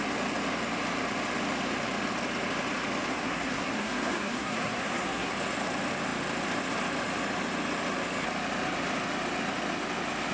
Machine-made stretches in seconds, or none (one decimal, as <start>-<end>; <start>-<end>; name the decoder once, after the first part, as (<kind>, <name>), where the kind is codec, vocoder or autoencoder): 3.1-5.3 (codec, SNAC)